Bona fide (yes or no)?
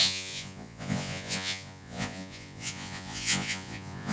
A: no